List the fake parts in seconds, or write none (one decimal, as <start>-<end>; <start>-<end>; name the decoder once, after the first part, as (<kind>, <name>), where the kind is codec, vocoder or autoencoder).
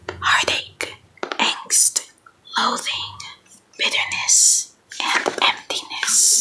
0.0-0.6 (vocoder, Vocos); 2.5-3.5